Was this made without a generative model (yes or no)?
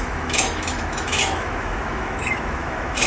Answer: no